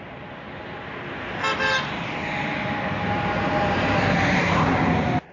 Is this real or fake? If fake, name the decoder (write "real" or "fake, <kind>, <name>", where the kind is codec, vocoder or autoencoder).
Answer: real